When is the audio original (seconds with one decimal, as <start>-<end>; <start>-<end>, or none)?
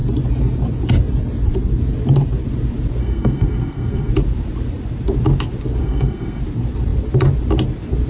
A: 0.0-3.0; 4.1-5.8; 6.4-8.1